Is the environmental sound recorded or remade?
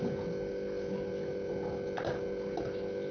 recorded